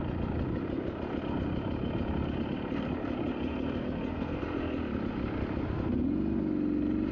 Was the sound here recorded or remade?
recorded